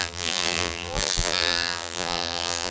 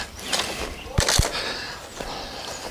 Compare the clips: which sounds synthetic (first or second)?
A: first